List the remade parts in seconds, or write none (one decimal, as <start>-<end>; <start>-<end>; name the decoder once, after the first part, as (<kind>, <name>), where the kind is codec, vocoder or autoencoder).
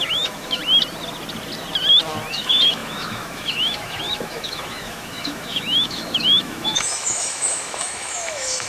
0.0-0.6 (autoencoder, DAC-VAE); 2.3-8.7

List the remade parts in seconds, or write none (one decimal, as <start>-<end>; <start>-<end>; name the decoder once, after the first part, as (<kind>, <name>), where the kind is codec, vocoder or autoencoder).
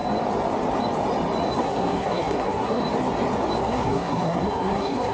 1.6-2.8 (codec, SNAC); 3.6-5.1